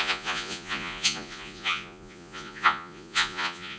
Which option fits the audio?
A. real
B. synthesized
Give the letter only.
B